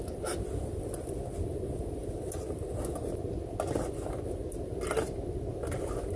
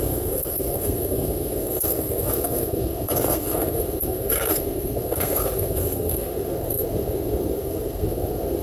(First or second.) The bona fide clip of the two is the first